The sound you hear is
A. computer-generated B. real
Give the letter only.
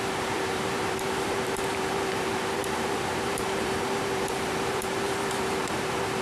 A